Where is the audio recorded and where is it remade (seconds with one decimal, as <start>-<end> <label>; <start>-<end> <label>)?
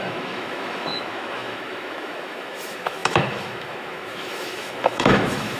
0.0-5.6 remade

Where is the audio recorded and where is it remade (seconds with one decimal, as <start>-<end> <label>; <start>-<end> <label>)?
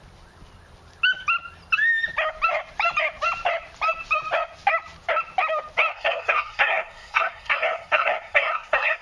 0.0-5.9 recorded; 5.9-9.0 remade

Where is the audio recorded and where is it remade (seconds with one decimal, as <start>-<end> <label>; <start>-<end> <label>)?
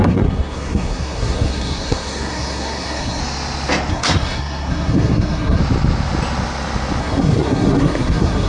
0.0-3.2 remade; 3.2-3.9 recorded; 3.9-5.6 remade; 5.6-7.0 recorded; 7.0-8.5 remade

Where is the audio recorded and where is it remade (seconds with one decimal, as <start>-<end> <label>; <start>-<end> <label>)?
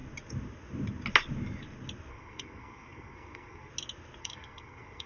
0.0-2.1 recorded; 2.1-3.7 remade; 3.7-4.2 recorded; 4.2-5.1 remade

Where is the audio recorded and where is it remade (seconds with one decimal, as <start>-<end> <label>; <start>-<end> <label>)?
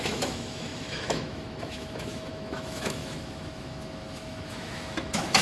0.0-5.4 remade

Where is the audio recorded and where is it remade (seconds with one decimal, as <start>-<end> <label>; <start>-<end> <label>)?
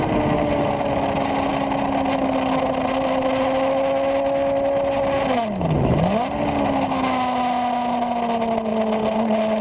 0.0-9.6 recorded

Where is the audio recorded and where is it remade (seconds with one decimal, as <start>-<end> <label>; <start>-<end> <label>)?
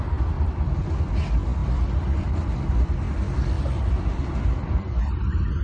0.0-1.6 recorded; 1.6-2.4 remade; 2.4-5.6 recorded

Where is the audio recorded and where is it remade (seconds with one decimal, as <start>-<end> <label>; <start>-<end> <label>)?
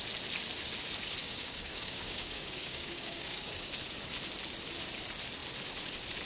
0.0-1.2 recorded; 1.2-3.7 remade; 3.7-6.3 recorded